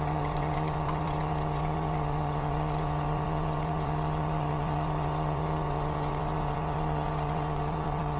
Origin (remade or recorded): remade